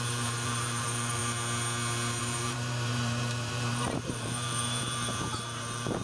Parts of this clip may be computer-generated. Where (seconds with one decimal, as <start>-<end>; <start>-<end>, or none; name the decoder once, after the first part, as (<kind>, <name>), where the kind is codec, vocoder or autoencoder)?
0.0-1.2 (vocoder, BigVGAN v2); 2.2-6.0